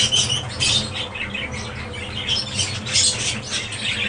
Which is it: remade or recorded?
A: recorded